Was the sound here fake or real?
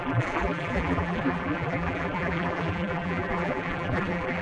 fake